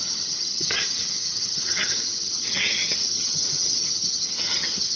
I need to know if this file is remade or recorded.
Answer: remade